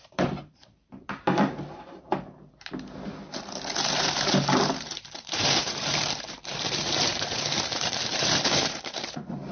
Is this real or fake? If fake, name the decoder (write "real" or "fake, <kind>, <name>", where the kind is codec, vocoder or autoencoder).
fake, vocoder, BigVGAN v2